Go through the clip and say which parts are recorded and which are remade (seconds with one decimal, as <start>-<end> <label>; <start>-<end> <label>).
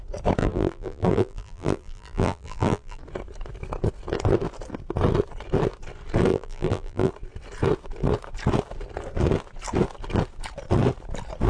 0.0-0.4 recorded; 0.4-3.0 remade; 3.0-6.3 recorded; 6.3-7.1 remade; 7.1-11.5 recorded